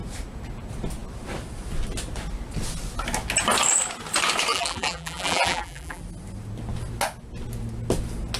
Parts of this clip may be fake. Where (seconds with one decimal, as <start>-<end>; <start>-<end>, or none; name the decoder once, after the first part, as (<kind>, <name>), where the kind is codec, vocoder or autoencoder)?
4.5-6.0 (vocoder, BigVGAN v2)